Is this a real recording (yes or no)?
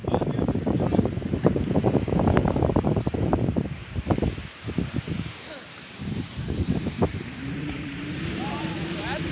no